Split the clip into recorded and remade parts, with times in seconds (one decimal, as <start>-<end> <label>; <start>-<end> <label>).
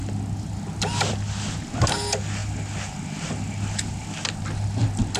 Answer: 0.0-5.2 recorded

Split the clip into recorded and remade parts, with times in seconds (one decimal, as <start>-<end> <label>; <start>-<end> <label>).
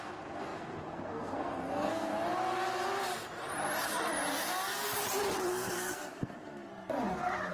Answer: 0.0-2.1 remade; 2.1-5.5 recorded; 5.5-6.7 remade; 6.7-7.5 recorded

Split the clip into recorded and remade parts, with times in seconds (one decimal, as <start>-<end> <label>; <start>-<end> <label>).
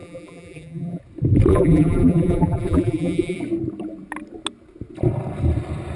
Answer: 0.0-1.0 remade; 1.0-1.5 recorded; 1.5-3.4 remade; 3.4-6.0 recorded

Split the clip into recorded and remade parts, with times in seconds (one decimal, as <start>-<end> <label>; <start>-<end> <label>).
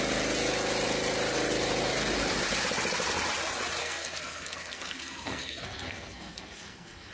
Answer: 0.0-3.8 recorded; 3.8-7.1 remade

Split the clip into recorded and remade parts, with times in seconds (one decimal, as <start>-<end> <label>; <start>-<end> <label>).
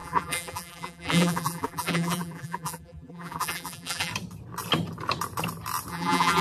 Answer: 0.0-4.1 remade; 4.1-5.9 recorded; 5.9-6.4 remade